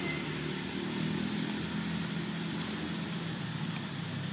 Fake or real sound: real